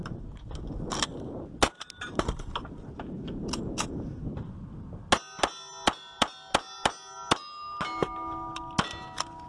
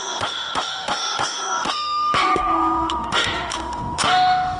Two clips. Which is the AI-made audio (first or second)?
second